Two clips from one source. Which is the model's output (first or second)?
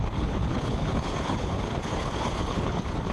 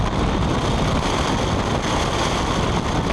first